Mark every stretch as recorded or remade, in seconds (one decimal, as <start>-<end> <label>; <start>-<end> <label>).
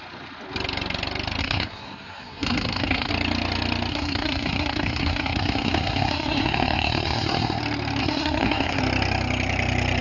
0.0-1.4 recorded; 1.4-3.1 remade; 3.1-3.9 recorded; 3.9-7.6 remade; 7.6-8.0 recorded; 8.0-8.8 remade; 8.8-10.0 recorded